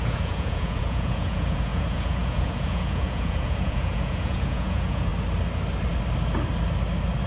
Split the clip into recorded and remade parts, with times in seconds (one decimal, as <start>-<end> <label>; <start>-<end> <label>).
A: 0.0-5.1 remade; 5.1-7.3 recorded